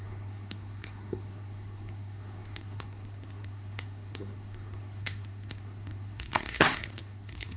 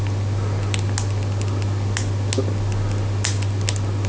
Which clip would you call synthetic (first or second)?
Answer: first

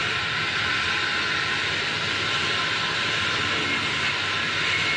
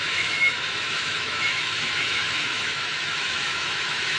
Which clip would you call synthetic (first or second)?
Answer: second